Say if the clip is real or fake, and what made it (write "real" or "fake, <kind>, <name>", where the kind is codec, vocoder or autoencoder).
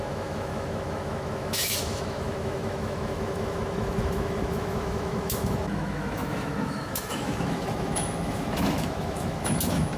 fake, autoencoder, DAC-VAE